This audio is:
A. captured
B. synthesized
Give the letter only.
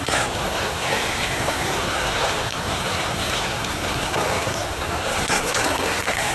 B